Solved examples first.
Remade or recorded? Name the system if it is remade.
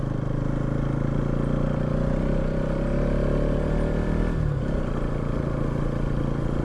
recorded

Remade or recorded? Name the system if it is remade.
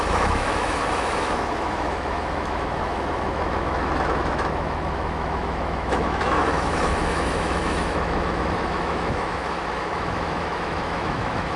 remade, autoencoder, DAC-VAE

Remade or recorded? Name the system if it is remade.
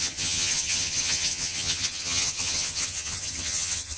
remade, vocoder, HiFi-GAN